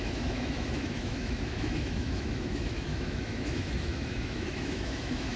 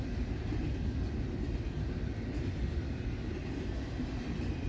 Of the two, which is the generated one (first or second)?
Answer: first